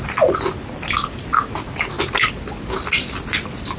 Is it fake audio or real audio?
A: real